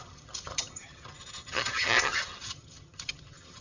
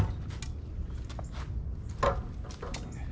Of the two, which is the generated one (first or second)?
first